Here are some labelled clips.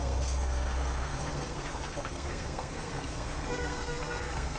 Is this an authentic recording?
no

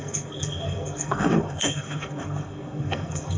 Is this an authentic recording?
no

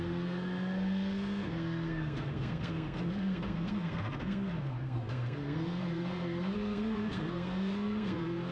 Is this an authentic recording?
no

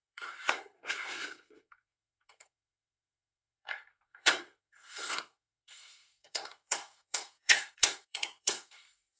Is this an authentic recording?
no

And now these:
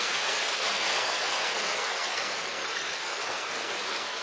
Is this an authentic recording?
no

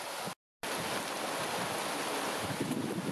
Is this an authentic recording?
yes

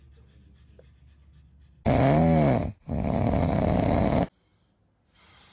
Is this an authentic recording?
yes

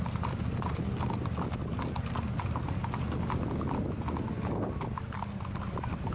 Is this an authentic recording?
yes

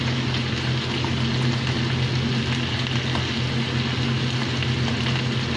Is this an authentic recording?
yes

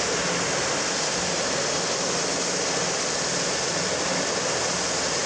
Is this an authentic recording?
yes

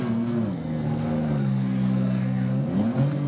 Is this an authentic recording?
no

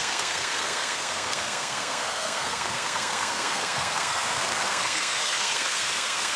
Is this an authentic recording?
no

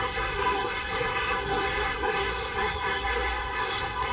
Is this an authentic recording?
no